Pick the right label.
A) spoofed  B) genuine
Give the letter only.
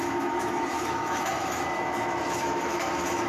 A